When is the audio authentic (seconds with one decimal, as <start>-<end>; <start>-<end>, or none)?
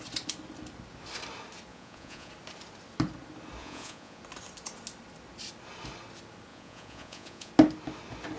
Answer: 0.0-1.7; 2.3-3.6; 4.2-6.5; 7.5-8.4